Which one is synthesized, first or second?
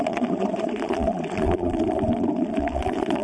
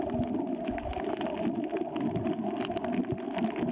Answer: first